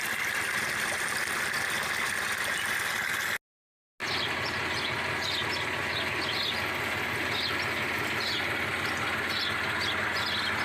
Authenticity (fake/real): real